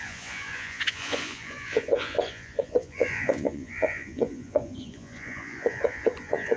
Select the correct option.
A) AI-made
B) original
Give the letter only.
A